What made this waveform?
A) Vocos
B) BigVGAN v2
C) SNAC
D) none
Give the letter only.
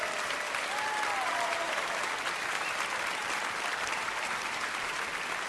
D